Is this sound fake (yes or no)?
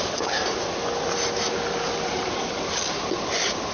no